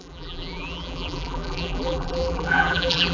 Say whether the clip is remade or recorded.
remade